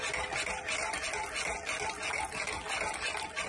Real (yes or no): yes